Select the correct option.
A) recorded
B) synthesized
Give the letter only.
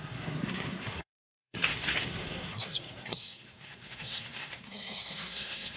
B